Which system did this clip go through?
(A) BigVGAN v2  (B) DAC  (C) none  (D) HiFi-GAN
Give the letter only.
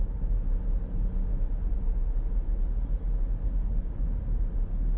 C